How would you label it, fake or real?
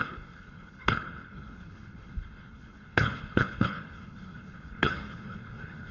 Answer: fake